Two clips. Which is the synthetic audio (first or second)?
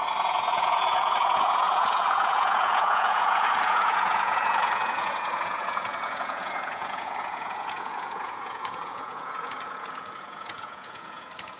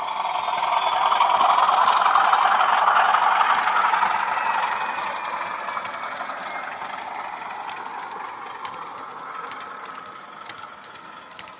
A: first